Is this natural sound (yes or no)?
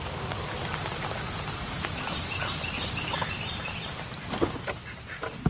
no